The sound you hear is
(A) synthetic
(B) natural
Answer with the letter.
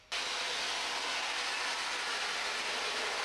B